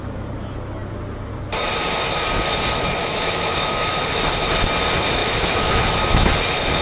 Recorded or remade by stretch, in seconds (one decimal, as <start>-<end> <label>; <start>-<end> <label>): 0.0-3.0 recorded; 3.0-4.0 remade; 4.0-5.2 recorded; 5.2-6.3 remade; 6.3-6.8 recorded